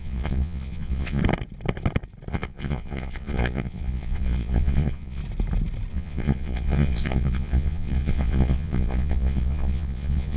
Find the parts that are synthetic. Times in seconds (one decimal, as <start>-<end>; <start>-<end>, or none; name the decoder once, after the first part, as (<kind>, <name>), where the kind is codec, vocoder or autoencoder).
0.0-1.2 (vocoder, Vocos); 2.3-5.2; 5.9-10.4